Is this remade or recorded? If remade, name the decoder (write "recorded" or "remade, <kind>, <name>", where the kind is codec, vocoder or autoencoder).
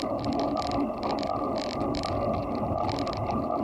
recorded